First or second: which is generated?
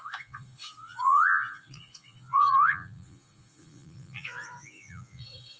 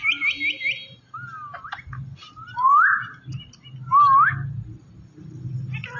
first